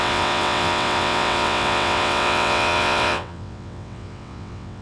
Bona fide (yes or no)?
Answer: no